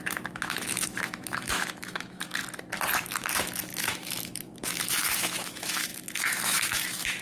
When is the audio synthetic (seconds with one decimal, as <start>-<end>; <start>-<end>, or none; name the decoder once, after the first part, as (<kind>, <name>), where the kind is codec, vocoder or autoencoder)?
0.0-2.4 (autoencoder, DAC-VAE); 3.0-7.2